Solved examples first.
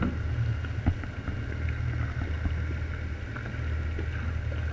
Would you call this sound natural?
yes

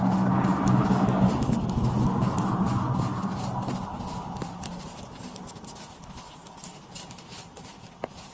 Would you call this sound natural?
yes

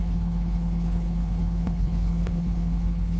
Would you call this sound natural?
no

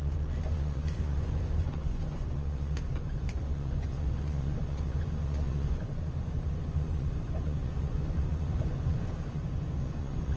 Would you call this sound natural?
no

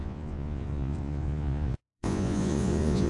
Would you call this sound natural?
no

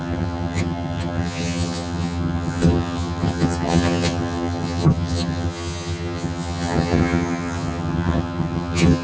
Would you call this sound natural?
no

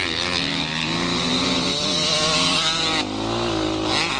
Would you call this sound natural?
yes